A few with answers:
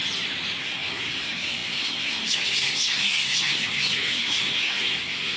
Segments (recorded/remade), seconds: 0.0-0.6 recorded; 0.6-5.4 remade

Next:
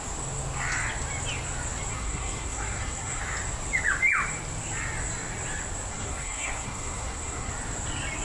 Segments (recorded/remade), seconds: 0.0-1.9 recorded; 1.9-3.2 remade; 3.2-5.9 recorded; 5.9-7.5 remade; 7.5-8.2 recorded

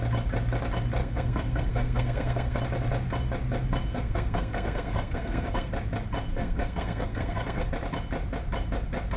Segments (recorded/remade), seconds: 0.0-1.0 recorded; 1.0-2.6 remade; 2.6-3.9 recorded; 3.9-5.7 remade; 5.7-6.3 recorded; 6.3-7.7 remade; 7.7-9.2 recorded

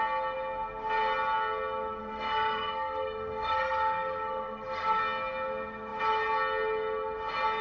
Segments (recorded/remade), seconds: 0.0-2.0 recorded; 2.0-5.0 remade; 5.0-7.6 recorded

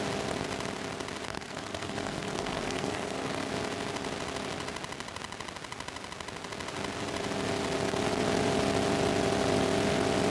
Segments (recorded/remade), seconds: 0.0-1.3 recorded; 1.3-3.5 remade; 3.5-10.3 recorded

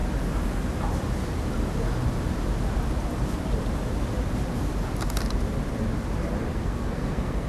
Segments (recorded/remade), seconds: 0.0-6.5 recorded; 6.5-7.5 remade

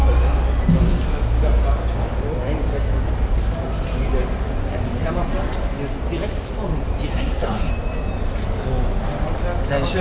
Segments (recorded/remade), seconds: 0.0-7.1 recorded; 7.1-7.7 remade; 7.7-10.0 recorded